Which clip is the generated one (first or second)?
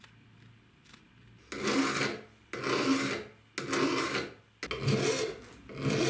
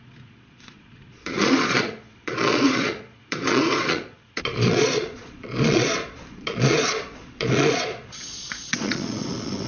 second